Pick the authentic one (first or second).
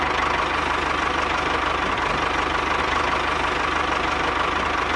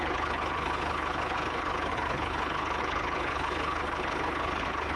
first